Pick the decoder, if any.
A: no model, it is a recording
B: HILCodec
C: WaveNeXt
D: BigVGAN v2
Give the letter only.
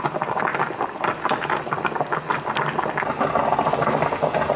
A